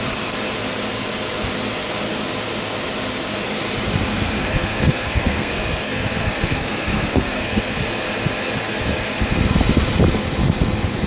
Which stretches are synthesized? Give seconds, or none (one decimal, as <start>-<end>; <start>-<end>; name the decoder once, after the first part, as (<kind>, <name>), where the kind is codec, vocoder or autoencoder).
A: 4.1-7.8 (codec, SNAC)